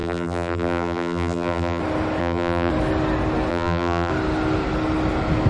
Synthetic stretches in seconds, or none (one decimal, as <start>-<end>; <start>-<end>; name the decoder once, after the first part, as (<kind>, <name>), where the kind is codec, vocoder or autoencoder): 0.0-1.8 (vocoder, BigVGAN v2); 2.2-2.7; 3.5-4.1